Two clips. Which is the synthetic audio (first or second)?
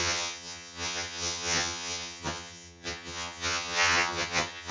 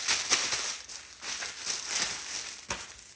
first